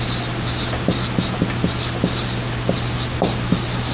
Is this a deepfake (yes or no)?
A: no